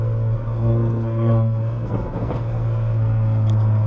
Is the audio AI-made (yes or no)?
yes